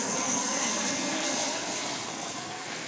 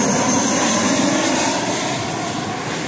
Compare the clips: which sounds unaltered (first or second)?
second